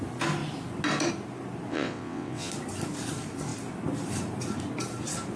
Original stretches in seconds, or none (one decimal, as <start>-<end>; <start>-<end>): 0.0-1.7; 2.5-5.4